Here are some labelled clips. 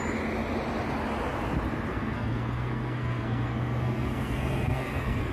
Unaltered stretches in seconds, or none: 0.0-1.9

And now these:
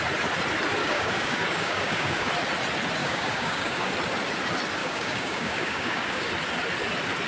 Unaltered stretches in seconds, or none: 0.0-0.8; 2.3-3.0; 3.9-4.8; 6.3-7.3

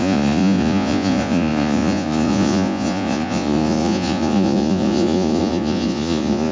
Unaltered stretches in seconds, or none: none